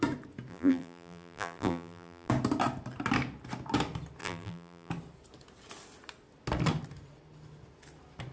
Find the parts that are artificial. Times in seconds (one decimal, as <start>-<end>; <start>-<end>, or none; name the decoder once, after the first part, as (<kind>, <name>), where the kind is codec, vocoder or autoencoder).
0.5-2.3 (vocoder, BigVGAN v2); 4.2-4.9